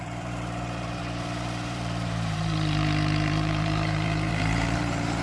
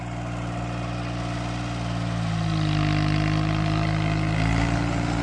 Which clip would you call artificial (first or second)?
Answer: first